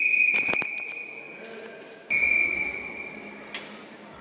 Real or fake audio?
real